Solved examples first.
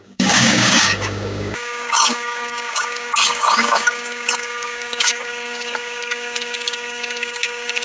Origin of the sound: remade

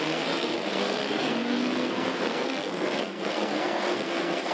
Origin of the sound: remade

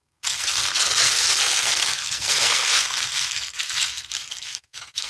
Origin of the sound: remade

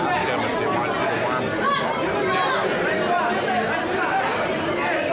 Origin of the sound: recorded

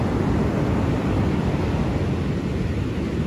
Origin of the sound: recorded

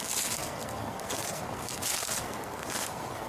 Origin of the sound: remade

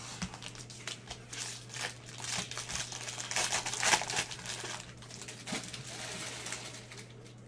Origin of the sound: recorded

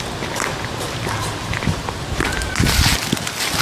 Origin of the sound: recorded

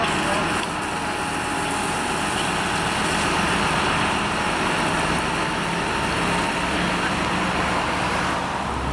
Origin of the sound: recorded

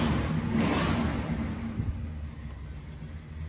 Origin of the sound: recorded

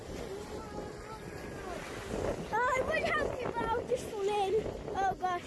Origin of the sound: recorded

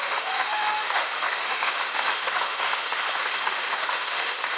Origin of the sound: remade